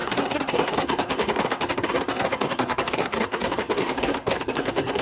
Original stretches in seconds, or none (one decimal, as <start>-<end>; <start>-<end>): none